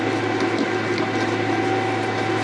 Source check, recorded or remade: recorded